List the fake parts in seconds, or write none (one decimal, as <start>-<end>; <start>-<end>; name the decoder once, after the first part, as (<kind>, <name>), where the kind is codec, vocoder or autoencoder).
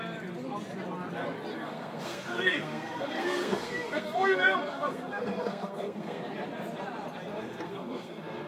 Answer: 1.5-6.2 (codec, SNAC); 7.3-8.5